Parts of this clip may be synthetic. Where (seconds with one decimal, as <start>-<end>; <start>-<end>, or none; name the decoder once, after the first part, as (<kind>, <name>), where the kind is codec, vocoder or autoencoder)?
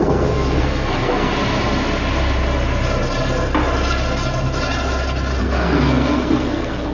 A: 0.0-1.3 (codec, SNAC); 5.4-6.9